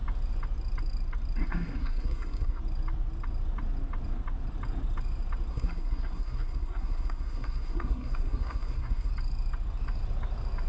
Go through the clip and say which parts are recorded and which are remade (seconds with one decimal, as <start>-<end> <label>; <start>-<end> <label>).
0.0-1.4 recorded; 1.4-2.6 remade; 2.6-5.5 recorded; 5.5-9.1 remade; 9.1-10.7 recorded